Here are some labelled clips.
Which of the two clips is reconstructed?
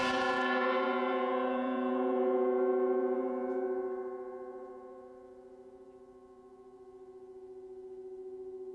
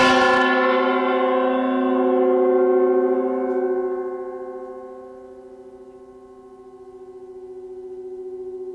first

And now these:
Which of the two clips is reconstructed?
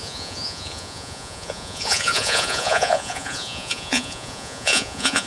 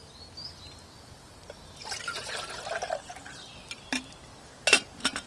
first